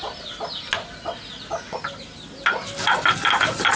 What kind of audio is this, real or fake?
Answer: real